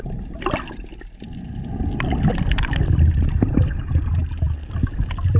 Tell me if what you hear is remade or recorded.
recorded